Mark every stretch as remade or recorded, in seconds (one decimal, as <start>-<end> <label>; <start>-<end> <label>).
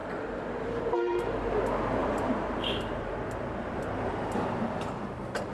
0.0-2.0 recorded; 2.0-4.1 remade; 4.1-5.5 recorded